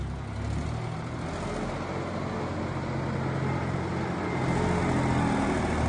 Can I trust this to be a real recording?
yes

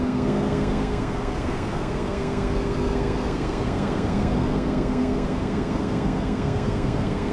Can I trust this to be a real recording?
no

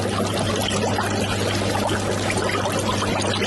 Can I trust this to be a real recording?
yes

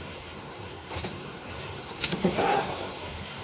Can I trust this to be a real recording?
no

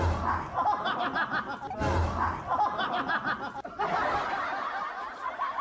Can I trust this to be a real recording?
yes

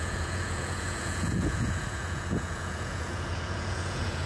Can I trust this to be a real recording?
no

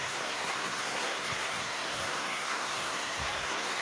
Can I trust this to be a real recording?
no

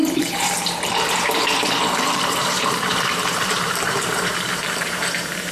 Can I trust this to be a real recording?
no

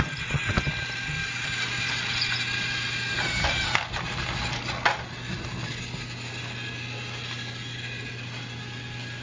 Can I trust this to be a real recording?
yes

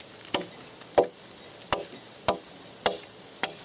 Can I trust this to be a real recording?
yes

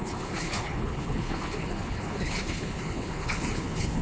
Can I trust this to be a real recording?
no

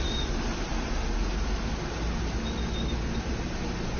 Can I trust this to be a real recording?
yes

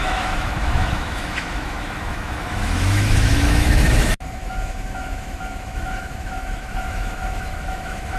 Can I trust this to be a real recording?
no